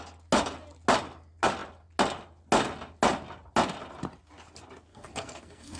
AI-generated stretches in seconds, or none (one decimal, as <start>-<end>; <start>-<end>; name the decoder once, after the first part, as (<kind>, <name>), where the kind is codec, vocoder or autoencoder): 4.9-5.8 (codec, SNAC)